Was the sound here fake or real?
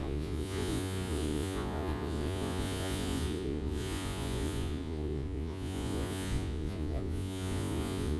fake